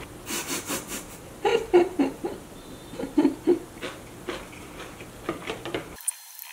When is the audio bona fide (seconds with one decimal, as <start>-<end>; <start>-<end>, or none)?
none